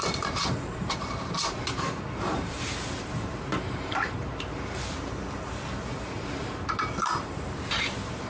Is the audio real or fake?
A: fake